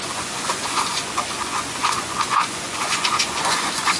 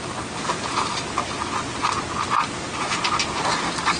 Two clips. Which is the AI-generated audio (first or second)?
first